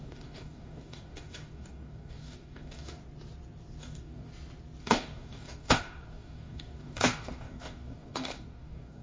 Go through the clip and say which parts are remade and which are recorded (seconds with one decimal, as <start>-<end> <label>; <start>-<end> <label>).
0.0-3.0 remade; 3.0-3.8 recorded; 3.8-4.3 remade; 4.3-4.8 recorded; 4.8-9.0 remade